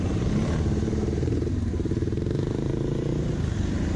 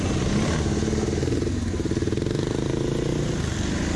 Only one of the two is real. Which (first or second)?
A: second